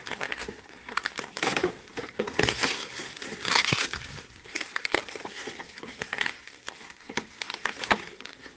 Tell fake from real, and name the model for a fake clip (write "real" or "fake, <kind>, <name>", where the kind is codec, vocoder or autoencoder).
fake, codec, SNAC